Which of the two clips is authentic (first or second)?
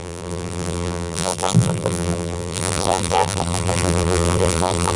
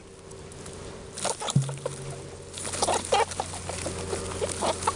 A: second